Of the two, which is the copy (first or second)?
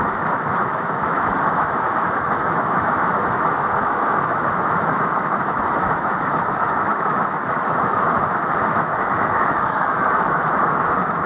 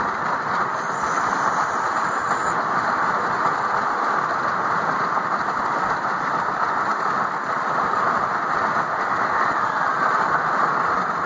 first